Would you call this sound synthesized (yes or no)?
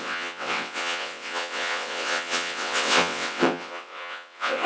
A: yes